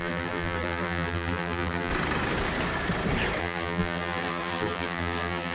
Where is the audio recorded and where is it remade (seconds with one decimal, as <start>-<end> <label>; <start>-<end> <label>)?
0.0-1.9 remade; 1.9-3.4 recorded; 3.4-5.5 remade